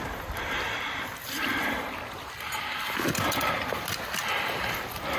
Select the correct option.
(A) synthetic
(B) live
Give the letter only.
B